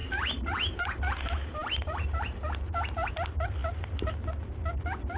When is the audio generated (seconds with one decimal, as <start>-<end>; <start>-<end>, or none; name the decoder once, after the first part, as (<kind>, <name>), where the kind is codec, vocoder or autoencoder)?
0.0-3.1 (vocoder, BigVGAN v2)